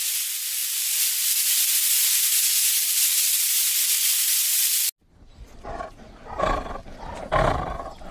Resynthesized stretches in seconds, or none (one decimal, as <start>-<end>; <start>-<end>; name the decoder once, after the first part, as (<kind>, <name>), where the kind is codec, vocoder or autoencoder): none

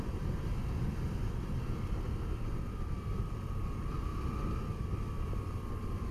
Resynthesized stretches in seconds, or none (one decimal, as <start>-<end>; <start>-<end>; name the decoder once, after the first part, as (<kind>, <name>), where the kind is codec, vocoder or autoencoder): none